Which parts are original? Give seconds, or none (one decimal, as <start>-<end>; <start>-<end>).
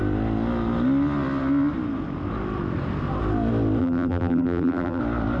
0.0-3.8; 5.0-5.4